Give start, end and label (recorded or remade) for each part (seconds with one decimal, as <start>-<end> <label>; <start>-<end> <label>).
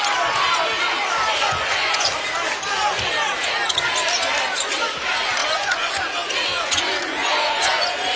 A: 0.0-1.4 recorded; 1.4-2.1 remade; 2.1-5.4 recorded; 5.4-6.0 remade; 6.0-6.5 recorded; 6.5-8.2 remade